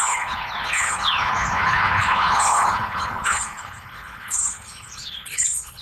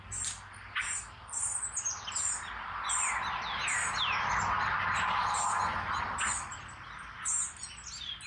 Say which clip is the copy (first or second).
first